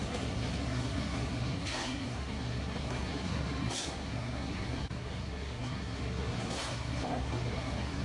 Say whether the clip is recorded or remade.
remade